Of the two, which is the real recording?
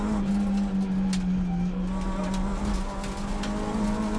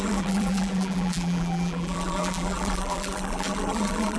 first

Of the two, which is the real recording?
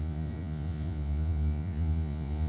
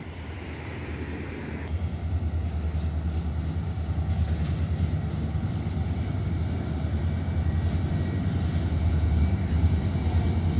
second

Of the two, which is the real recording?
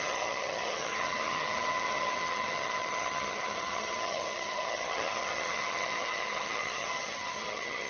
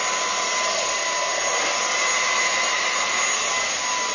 second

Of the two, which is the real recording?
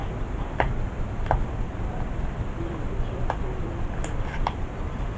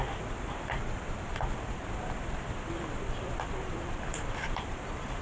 first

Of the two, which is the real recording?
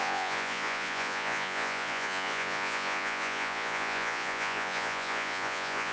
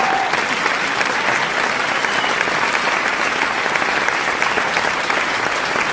second